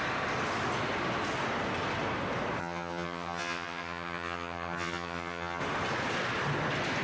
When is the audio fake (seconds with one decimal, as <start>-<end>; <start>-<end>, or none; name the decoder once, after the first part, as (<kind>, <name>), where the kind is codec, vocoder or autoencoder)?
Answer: 2.6-5.6 (vocoder, HiFi-GAN)